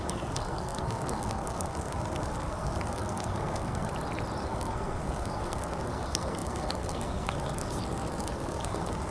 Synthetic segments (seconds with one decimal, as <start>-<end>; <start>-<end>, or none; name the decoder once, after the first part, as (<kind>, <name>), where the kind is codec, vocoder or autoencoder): 0.0-3.9 (codec, SNAC); 4.4-9.1